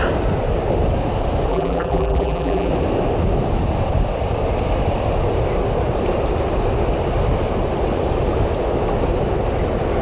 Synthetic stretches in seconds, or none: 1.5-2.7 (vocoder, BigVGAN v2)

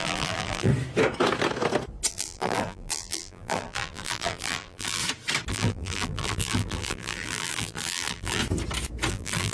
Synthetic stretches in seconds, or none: 0.0-0.7 (vocoder, BigVGAN v2); 2.1-5.0; 5.5-8.4; 9.1-9.5

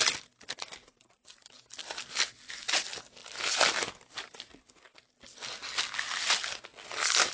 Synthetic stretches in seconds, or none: 3.2-5.0 (vocoder, BigVGAN v2)

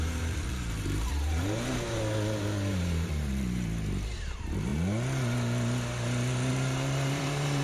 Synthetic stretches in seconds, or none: 0.0-4.7 (vocoder, BigVGAN v2); 6.5-7.6

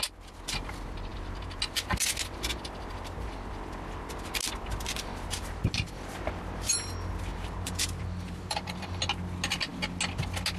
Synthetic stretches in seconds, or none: 7.3-9.0 (vocoder, BigVGAN v2)

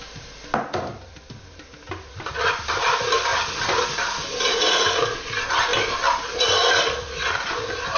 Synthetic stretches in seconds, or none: none